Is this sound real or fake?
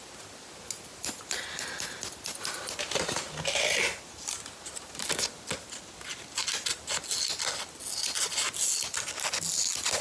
real